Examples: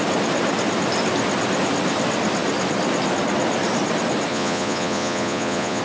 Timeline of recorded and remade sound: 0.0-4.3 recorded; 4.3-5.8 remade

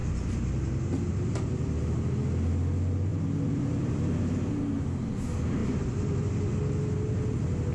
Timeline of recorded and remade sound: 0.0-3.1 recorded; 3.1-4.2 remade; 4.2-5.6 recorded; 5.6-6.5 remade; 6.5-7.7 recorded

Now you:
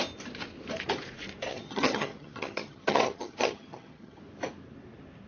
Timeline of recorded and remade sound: 0.0-1.5 recorded; 1.5-4.2 remade; 4.2-5.3 recorded

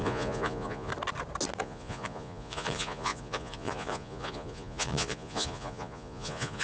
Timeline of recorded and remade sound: 0.0-0.9 remade; 0.9-1.6 recorded; 1.6-6.6 remade

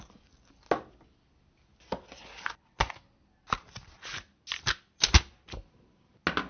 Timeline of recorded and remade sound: 0.0-6.5 recorded

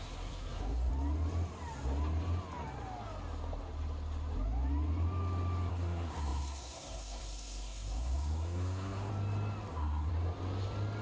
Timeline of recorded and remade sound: 0.0-0.9 remade; 0.9-5.7 recorded; 5.7-9.1 remade; 9.1-9.7 recorded; 9.7-10.1 remade; 10.1-11.0 recorded

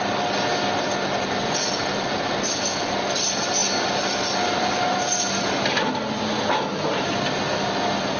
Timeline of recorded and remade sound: 0.0-1.4 recorded; 1.4-2.1 remade; 2.1-3.6 recorded; 3.6-4.7 remade; 4.7-8.2 recorded

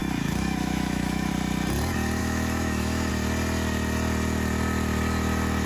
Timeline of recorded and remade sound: 0.0-1.3 remade; 1.3-2.2 recorded; 2.2-3.1 remade; 3.1-5.7 recorded